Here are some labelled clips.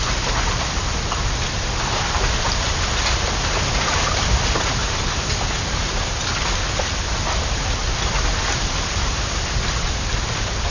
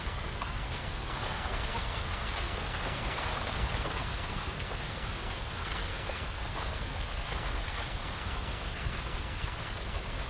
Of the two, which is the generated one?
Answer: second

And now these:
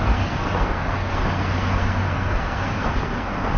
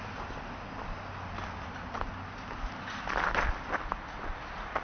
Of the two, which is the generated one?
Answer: first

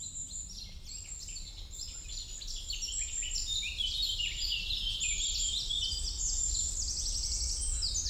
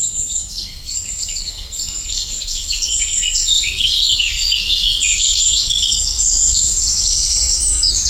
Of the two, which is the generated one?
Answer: second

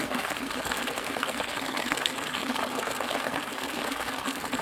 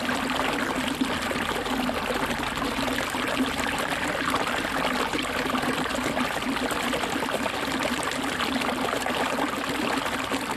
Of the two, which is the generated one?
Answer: first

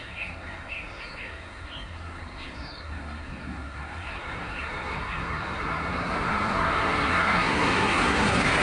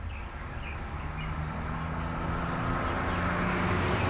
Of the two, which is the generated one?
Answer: first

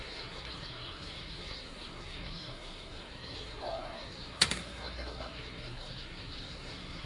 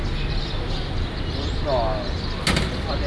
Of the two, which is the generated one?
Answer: first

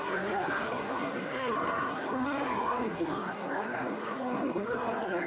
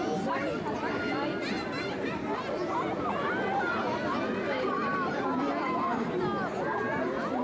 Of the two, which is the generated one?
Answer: first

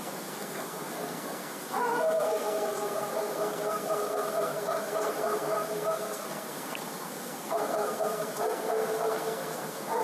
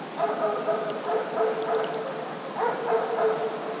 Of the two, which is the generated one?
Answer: first